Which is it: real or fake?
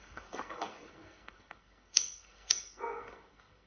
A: fake